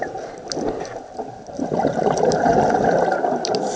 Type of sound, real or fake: fake